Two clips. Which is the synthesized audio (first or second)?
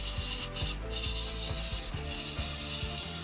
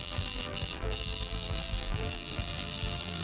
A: second